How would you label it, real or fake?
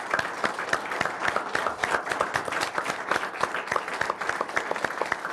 real